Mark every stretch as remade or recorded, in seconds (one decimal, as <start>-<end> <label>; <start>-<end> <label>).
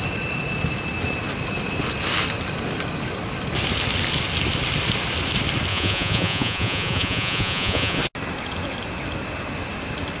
0.0-5.7 recorded; 5.7-8.0 remade; 8.0-10.2 recorded